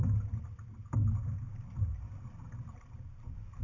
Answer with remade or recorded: recorded